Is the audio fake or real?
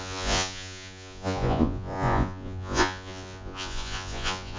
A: fake